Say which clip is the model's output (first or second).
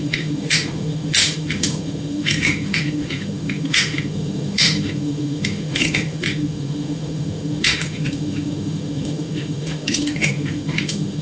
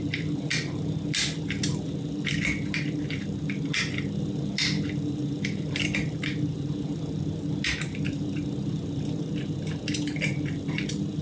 first